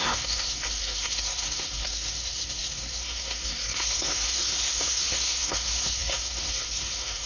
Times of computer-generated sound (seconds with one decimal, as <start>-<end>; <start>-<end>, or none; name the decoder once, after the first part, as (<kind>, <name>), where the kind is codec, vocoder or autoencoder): 0.0-7.3 (codec, SNAC)